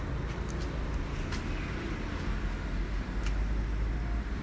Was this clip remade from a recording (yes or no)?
no